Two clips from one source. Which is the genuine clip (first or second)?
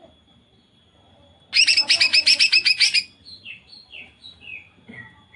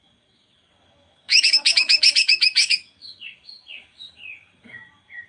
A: first